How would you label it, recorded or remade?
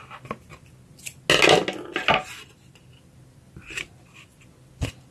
recorded